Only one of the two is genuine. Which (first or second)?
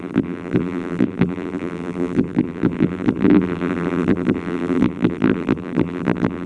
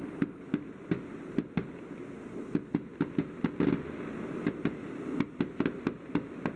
second